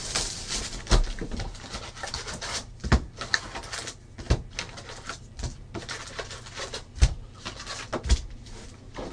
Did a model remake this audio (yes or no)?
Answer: no